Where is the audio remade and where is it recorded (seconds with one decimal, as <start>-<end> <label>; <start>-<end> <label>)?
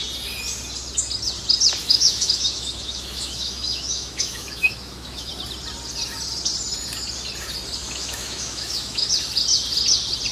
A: 0.0-1.8 recorded; 1.8-5.3 remade; 5.3-7.8 recorded; 7.8-9.1 remade; 9.1-10.3 recorded